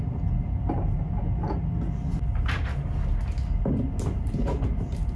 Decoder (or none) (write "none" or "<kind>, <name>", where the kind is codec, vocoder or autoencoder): none